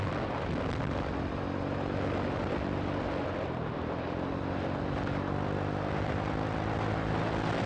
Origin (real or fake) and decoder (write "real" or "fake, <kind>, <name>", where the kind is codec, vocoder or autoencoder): real